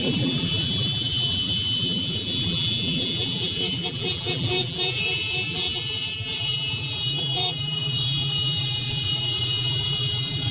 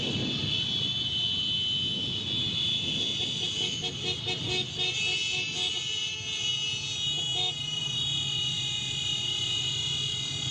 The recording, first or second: second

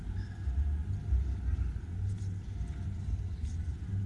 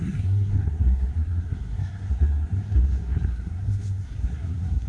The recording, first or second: first